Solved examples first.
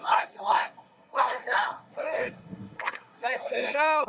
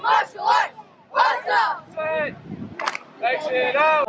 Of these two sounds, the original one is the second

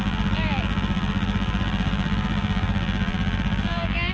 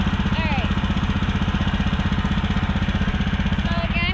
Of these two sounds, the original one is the second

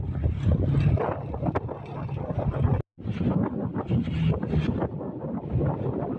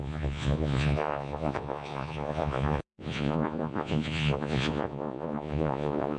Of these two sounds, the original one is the first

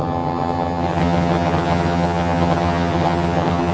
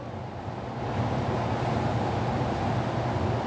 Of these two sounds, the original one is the second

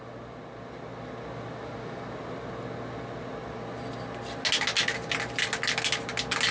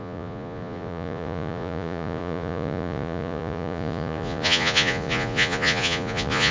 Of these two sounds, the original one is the first